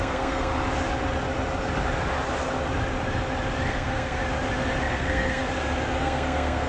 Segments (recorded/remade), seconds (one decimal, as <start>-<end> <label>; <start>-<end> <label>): 0.0-0.5 remade; 0.5-3.7 recorded; 3.7-4.2 remade; 4.2-4.9 recorded; 4.9-5.4 remade; 5.4-6.0 recorded; 6.0-6.7 remade